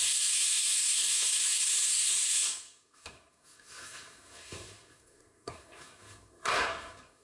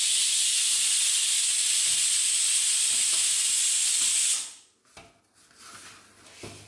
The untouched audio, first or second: second